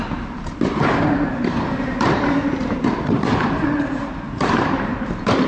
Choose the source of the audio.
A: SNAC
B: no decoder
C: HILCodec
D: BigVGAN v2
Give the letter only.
D